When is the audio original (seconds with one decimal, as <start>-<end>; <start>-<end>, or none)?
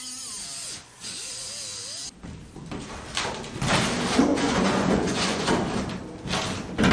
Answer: 0.0-0.6; 1.5-4.3; 5.5-6.9